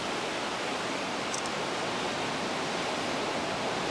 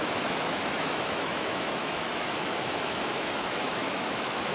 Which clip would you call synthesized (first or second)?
second